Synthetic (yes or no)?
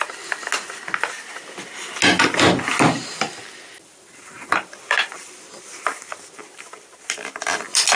no